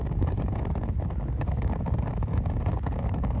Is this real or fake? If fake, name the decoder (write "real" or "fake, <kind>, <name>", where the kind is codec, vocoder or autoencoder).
fake, codec, DAC